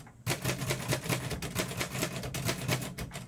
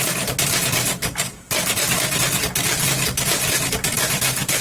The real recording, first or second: first